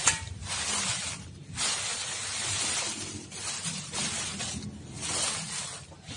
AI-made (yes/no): no